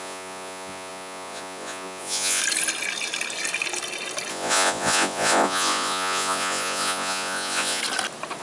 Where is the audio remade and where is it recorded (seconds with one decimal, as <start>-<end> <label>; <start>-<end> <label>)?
0.0-2.4 remade; 2.4-4.3 recorded; 4.3-7.8 remade; 7.8-8.4 recorded

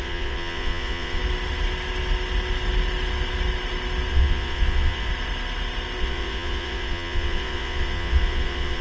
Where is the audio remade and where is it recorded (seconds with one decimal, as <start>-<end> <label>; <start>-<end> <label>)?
0.0-1.2 remade; 1.2-4.1 recorded; 4.1-5.1 remade; 5.1-6.0 recorded; 6.0-8.8 remade